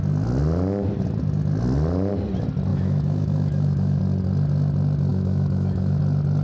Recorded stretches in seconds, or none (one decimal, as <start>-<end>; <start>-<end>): 0.0-2.7; 4.0-5.1; 6.0-6.4